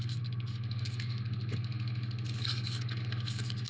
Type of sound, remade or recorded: remade